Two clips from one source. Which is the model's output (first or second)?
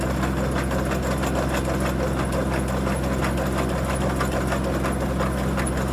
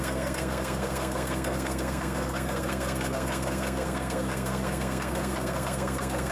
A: second